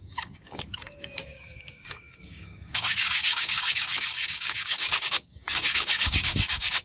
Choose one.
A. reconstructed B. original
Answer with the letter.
A